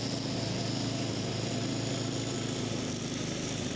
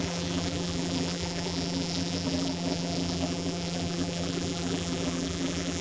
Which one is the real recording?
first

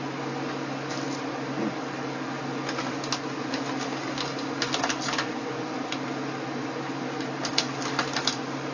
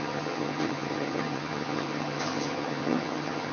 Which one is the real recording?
first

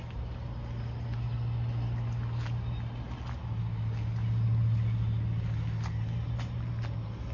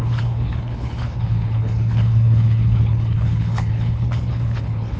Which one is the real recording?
first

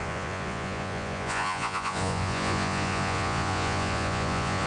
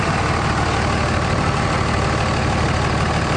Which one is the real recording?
second